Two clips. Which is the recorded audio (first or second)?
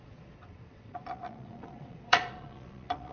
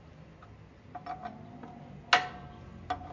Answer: second